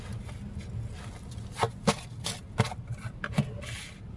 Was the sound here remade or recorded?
recorded